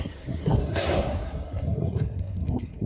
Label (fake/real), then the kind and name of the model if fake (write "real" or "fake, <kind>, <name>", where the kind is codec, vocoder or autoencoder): fake, codec, SNAC